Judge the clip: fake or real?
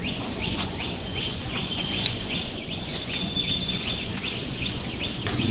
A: fake